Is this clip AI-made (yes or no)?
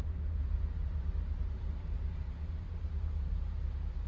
yes